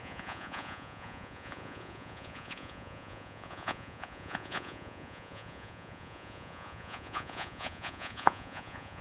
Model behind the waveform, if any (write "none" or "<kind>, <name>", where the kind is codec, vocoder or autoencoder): vocoder, Vocos